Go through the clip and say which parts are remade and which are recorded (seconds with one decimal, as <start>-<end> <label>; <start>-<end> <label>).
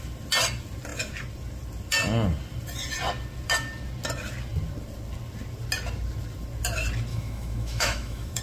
0.0-7.1 recorded; 7.1-8.4 remade